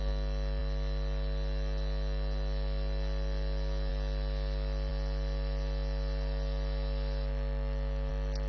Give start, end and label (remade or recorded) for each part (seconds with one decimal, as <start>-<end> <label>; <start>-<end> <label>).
0.0-8.5 recorded